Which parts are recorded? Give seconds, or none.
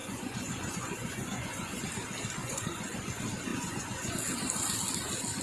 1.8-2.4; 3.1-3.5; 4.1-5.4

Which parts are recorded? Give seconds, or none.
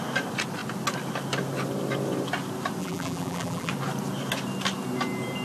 0.0-2.8; 3.7-5.4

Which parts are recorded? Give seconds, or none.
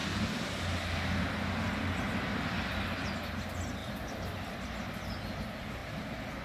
0.6-3.8; 5.1-6.4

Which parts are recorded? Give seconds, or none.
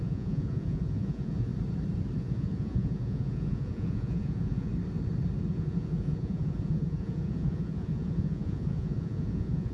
1.5-2.2; 4.7-5.5